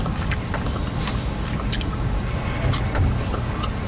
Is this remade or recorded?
recorded